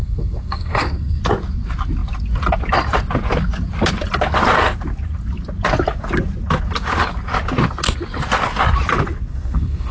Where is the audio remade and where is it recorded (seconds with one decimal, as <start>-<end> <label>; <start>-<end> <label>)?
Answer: 0.0-1.2 remade; 1.2-9.3 recorded; 9.3-9.9 remade